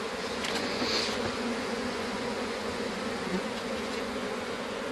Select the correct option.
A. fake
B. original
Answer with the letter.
A